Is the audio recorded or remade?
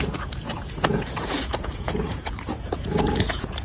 remade